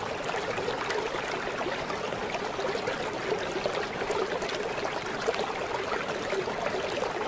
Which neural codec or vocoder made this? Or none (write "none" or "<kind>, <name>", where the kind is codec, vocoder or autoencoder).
none